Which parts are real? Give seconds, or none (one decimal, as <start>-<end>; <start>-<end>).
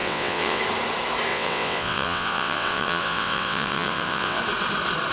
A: 0.6-1.3; 4.4-5.1